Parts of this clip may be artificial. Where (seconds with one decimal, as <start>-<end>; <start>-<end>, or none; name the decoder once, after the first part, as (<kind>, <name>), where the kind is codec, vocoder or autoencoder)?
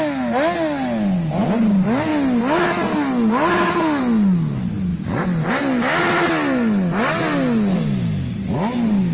none